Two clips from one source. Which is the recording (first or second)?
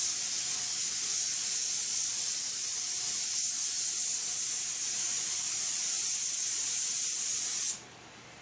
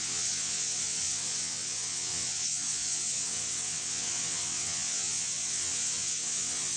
first